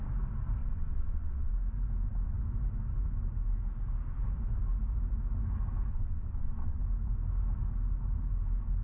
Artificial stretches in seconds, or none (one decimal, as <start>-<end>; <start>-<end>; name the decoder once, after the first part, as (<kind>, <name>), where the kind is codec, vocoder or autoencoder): 0.6-1.5 (vocoder, WaveNeXt); 5.9-6.8